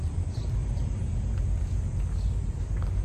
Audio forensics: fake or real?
fake